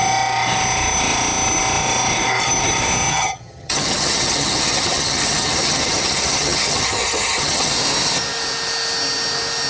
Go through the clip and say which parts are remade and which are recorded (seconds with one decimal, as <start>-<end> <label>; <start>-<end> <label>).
0.0-3.1 recorded; 3.1-7.7 remade; 7.7-9.7 recorded